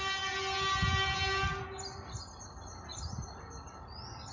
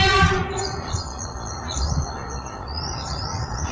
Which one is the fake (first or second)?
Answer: second